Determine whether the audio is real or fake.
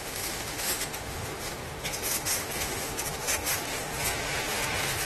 fake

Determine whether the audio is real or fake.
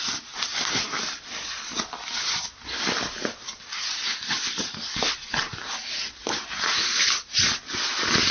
real